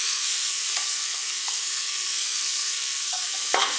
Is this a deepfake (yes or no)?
yes